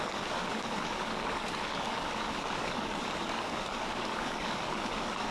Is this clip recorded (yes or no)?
no